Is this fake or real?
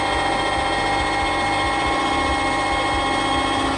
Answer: real